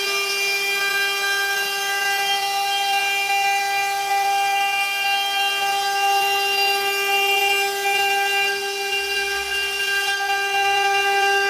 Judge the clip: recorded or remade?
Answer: recorded